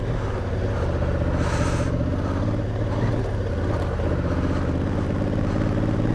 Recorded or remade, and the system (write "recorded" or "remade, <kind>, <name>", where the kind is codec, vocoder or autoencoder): recorded